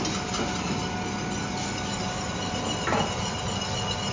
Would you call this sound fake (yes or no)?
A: no